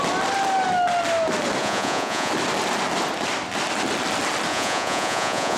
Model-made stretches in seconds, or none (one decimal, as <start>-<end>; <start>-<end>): 1.6-2.3; 4.5-5.6